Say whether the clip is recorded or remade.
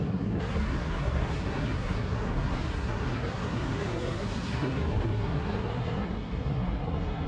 remade